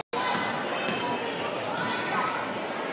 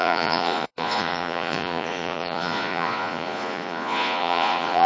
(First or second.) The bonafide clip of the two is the first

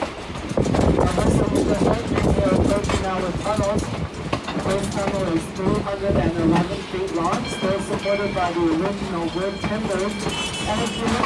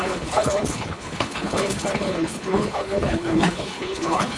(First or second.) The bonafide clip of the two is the first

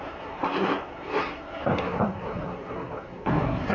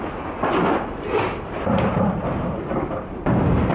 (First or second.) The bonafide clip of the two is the second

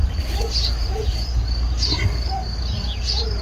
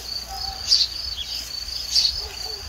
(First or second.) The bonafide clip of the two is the second